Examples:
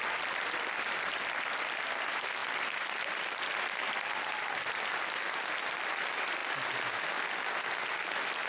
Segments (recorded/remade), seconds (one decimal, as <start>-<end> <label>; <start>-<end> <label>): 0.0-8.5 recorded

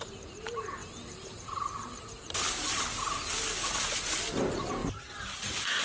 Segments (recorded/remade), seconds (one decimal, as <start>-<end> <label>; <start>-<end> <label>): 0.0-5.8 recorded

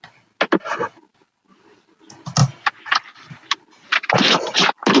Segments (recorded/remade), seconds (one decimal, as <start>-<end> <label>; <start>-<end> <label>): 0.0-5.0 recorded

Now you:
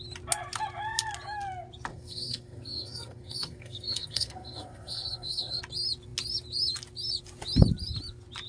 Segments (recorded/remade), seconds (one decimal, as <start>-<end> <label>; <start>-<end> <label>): 0.0-1.9 recorded; 1.9-5.6 remade; 5.6-8.5 recorded

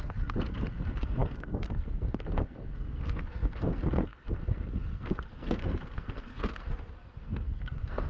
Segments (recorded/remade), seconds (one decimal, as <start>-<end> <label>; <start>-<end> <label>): 0.0-8.1 remade